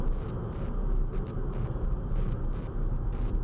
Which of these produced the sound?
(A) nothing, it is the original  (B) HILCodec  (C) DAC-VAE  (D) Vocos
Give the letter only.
A